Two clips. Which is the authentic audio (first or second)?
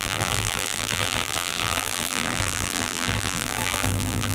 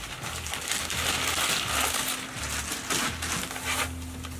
second